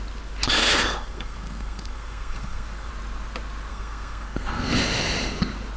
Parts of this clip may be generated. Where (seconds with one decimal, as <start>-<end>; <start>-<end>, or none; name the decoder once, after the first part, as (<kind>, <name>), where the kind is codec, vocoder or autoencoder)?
0.6-2.9 (codec, SNAC); 3.7-4.7